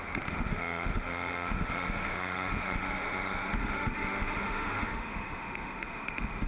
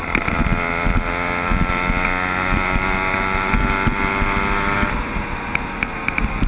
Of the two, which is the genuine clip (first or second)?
second